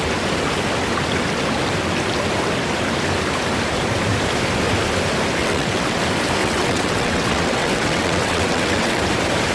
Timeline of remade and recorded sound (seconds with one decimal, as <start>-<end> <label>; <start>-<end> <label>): 0.0-5.4 recorded; 5.4-6.0 remade; 6.0-6.4 recorded; 6.4-9.0 remade; 9.0-9.5 recorded